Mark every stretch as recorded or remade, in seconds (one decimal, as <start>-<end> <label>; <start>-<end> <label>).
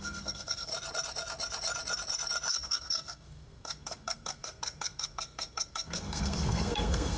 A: 0.0-0.7 remade; 0.7-2.5 recorded; 2.5-7.2 remade